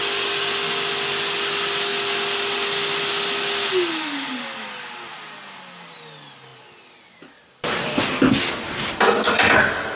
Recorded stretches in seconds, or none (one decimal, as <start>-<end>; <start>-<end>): 0.0-10.0